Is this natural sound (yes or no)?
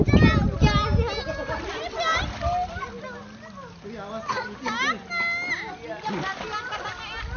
yes